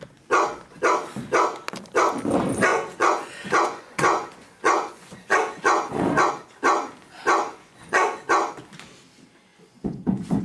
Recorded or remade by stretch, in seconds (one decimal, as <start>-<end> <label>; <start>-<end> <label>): 0.0-2.7 recorded; 2.7-6.3 remade; 6.3-7.5 recorded; 7.5-8.3 remade; 8.3-9.5 recorded; 9.5-10.4 remade